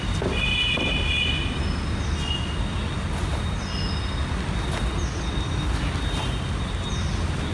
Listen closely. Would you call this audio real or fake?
real